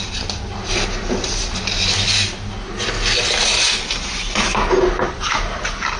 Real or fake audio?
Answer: real